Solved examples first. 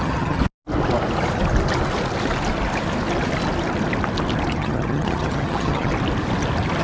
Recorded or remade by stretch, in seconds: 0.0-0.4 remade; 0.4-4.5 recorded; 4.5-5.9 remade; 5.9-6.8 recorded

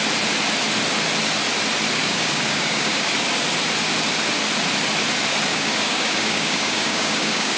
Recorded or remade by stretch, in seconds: 0.0-2.0 recorded; 2.0-3.1 remade; 3.1-5.5 recorded; 5.5-7.6 remade

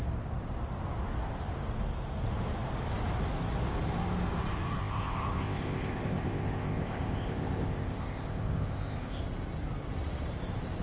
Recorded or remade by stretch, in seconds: 0.0-4.8 recorded; 4.8-9.2 remade; 9.2-10.8 recorded

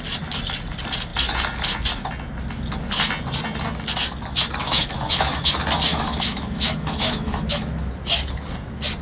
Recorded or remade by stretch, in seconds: 0.0-4.6 recorded; 4.6-5.5 remade; 5.5-5.9 recorded; 5.9-7.9 remade; 7.9-9.0 recorded

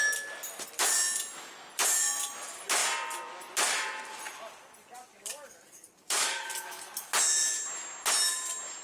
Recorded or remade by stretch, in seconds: 0.0-5.0 recorded; 5.0-6.9 remade; 6.9-8.8 recorded

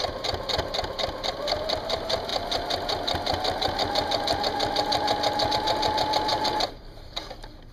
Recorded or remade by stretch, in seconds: 0.0-6.3 recorded; 6.3-7.1 remade; 7.1-7.7 recorded